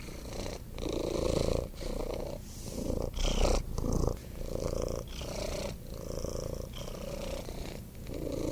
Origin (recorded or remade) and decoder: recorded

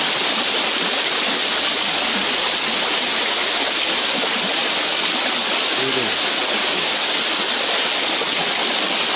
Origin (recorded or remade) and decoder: recorded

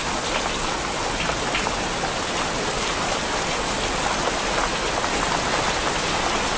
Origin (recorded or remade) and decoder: recorded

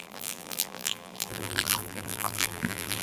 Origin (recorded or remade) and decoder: remade, vocoder, BigVGAN v2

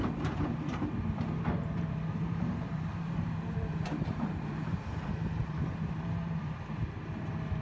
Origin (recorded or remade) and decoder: remade, vocoder, BigVGAN v2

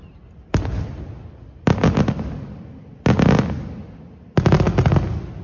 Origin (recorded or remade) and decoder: recorded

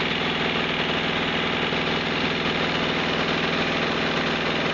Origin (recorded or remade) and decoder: recorded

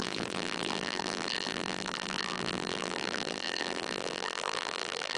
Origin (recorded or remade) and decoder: remade, vocoder, BigVGAN v2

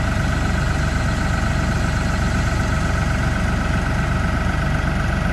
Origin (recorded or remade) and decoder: recorded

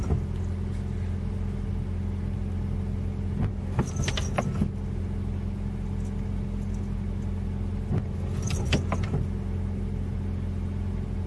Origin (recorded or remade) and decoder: recorded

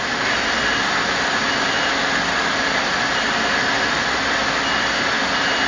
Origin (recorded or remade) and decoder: recorded